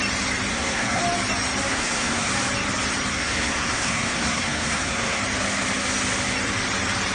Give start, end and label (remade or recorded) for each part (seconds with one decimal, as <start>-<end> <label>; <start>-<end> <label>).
0.0-0.5 recorded; 0.5-1.0 remade; 1.0-1.7 recorded; 1.7-2.3 remade; 2.3-3.1 recorded; 3.1-5.2 remade; 5.2-7.1 recorded